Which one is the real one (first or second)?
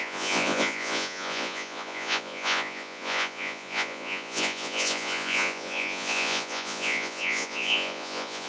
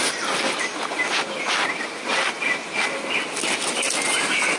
second